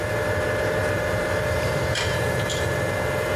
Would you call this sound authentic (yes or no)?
no